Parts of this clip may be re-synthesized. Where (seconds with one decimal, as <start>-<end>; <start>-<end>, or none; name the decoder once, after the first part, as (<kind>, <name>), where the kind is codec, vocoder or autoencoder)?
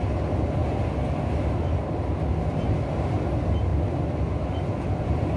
none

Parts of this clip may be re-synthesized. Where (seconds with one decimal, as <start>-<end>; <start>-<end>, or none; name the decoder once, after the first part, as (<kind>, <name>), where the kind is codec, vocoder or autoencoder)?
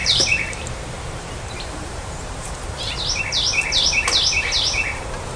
0.0-3.2 (vocoder, BigVGAN v2)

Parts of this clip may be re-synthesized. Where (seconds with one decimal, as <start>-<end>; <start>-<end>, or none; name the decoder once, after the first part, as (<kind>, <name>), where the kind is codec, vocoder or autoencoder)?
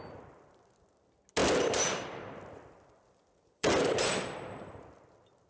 1.4-4.7 (vocoder, BigVGAN v2)